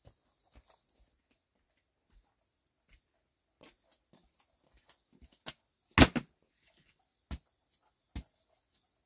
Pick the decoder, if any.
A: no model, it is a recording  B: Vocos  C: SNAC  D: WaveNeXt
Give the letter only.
A